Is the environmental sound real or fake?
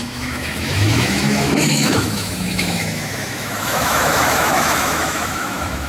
fake